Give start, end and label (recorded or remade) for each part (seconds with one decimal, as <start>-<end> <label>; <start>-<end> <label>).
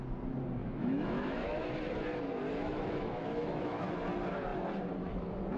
0.0-0.6 recorded; 0.6-1.6 remade; 1.6-2.6 recorded; 2.6-3.9 remade; 3.9-5.6 recorded